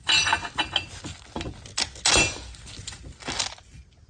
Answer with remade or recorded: recorded